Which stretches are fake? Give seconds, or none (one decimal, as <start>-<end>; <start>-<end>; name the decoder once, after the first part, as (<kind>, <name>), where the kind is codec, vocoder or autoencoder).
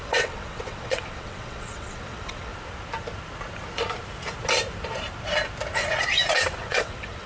0.0-2.5 (vocoder, WaveNeXt); 6.6-7.3